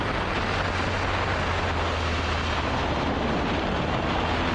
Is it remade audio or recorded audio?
recorded